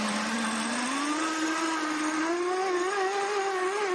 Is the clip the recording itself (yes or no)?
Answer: yes